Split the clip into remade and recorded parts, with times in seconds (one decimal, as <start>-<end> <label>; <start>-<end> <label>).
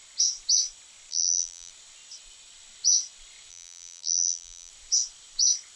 0.0-1.1 recorded; 1.1-1.7 remade; 1.7-3.5 recorded; 3.5-4.7 remade; 4.7-5.8 recorded